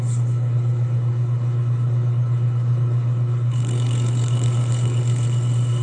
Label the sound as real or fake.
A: fake